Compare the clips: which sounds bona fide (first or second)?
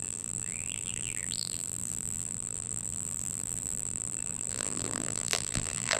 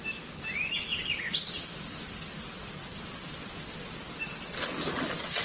second